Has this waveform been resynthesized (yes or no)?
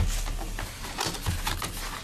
no